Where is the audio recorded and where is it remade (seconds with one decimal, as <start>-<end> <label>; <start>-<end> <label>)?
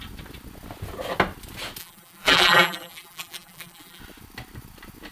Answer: 0.0-1.8 recorded; 1.8-4.0 remade; 4.0-5.1 recorded